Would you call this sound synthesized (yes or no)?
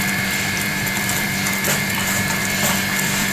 yes